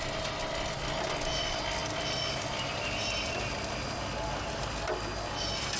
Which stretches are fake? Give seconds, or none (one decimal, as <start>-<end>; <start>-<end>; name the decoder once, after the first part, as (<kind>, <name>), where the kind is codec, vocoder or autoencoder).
none